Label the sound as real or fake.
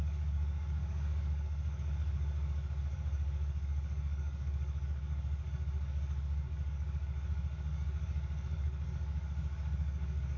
fake